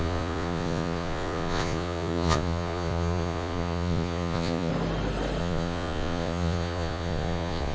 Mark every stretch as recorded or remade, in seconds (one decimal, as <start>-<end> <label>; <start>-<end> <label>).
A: 0.0-4.7 remade; 4.7-5.4 recorded; 5.4-7.7 remade